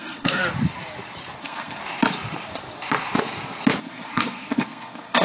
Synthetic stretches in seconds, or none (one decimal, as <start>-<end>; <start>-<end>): 0.0-0.4; 1.4-1.8; 3.8-5.2